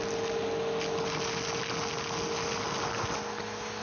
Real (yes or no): yes